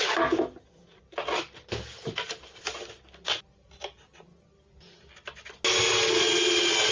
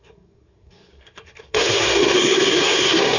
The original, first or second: first